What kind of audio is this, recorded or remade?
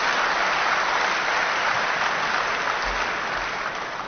recorded